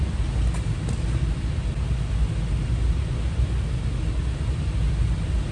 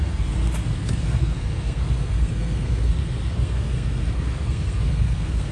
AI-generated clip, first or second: second